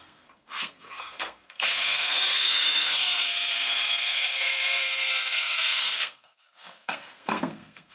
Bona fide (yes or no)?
no